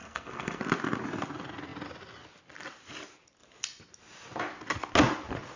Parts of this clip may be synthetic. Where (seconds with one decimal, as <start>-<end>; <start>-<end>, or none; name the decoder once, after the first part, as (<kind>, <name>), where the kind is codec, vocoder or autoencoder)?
0.0-0.6 (codec, SNAC)